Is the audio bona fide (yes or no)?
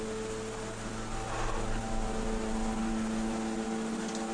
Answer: yes